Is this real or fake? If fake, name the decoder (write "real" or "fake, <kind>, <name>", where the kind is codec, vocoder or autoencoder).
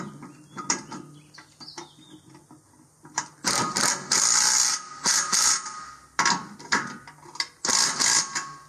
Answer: fake, vocoder, BigVGAN v2